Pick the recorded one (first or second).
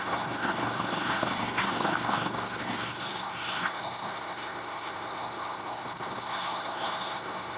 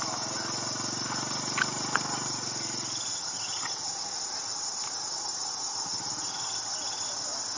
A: second